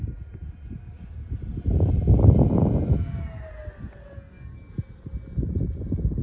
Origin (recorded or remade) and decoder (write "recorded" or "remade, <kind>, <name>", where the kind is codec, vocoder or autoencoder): recorded